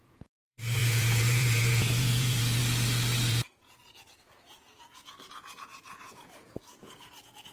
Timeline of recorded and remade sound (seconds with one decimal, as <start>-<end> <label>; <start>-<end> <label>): 0.0-2.6 remade; 2.6-3.3 recorded; 3.3-7.5 remade